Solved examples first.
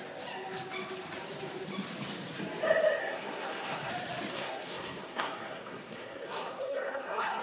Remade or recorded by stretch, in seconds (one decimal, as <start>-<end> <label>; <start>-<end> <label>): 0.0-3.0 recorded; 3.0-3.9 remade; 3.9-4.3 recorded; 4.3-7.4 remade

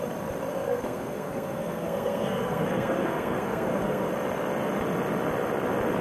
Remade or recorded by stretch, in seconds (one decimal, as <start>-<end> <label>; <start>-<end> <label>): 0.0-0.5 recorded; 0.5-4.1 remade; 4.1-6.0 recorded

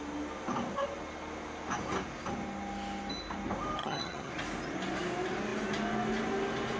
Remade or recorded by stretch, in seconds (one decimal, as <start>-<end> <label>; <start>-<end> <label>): 0.0-3.8 recorded; 3.8-4.3 remade; 4.3-6.8 recorded

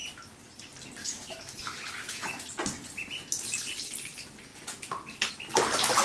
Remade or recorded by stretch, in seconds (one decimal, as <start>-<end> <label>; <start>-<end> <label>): 0.0-1.0 recorded; 1.0-2.5 remade; 2.5-6.0 recorded

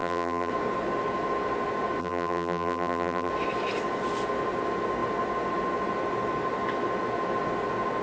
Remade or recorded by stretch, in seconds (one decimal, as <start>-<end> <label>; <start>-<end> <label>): 0.0-0.5 remade; 0.5-2.0 recorded; 2.0-3.3 remade; 3.3-8.0 recorded

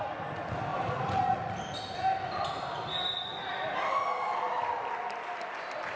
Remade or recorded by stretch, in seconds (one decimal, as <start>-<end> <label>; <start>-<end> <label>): 0.0-0.7 recorded; 0.7-1.6 remade; 1.6-6.0 recorded

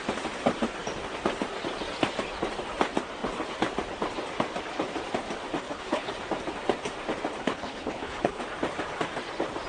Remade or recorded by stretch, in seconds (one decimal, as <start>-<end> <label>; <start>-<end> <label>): 0.0-5.6 recorded; 5.6-6.1 remade; 6.1-7.4 recorded; 7.4-8.4 remade; 8.4-9.7 recorded